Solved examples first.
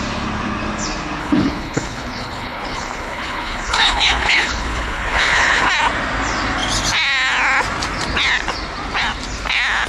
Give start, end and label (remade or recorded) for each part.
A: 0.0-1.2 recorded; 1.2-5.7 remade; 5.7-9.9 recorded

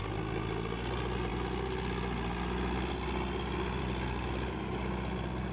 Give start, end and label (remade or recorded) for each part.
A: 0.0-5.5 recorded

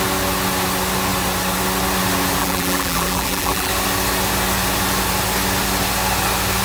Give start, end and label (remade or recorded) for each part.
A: 0.0-2.4 recorded; 2.4-3.7 remade; 3.7-6.6 recorded

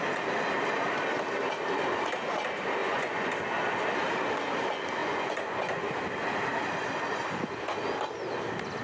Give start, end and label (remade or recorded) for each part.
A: 0.0-2.8 recorded; 2.8-3.3 remade; 3.3-5.0 recorded; 5.0-5.9 remade; 5.9-8.8 recorded

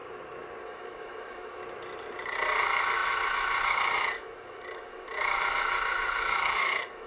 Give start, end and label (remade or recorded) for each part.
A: 0.0-0.6 recorded; 0.6-1.6 remade; 1.6-2.6 recorded; 2.6-7.1 remade

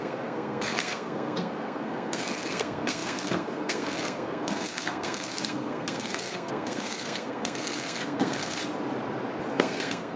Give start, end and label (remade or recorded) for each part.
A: 0.0-8.6 remade; 8.6-9.5 recorded; 9.5-10.2 remade